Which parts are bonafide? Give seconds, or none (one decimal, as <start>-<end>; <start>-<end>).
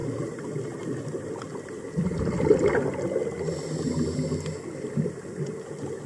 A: 0.0-6.1